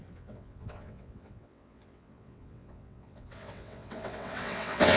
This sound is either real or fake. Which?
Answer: fake